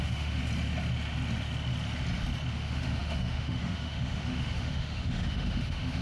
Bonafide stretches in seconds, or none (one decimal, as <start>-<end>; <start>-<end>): 0.4-2.5